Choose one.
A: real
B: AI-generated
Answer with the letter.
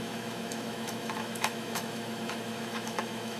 B